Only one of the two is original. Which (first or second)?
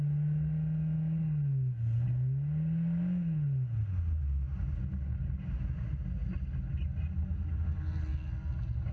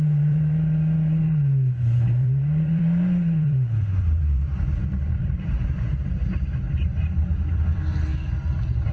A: first